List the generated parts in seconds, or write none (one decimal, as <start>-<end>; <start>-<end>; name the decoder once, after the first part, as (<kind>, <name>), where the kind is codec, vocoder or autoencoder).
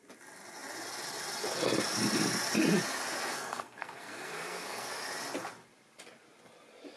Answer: 3.3-4.9 (codec, SNAC)